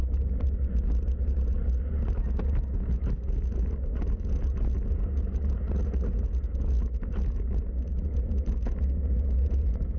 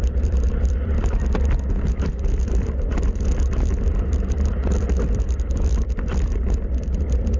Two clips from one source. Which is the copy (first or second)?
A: second